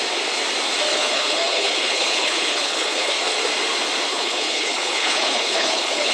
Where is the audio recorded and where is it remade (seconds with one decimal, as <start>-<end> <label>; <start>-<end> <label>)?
0.0-0.9 recorded; 0.9-3.1 remade; 3.1-4.1 recorded; 4.1-6.1 remade